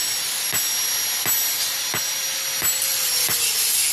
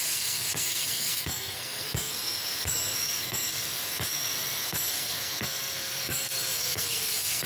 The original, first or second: first